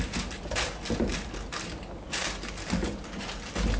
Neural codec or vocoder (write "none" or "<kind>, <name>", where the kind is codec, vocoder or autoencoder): none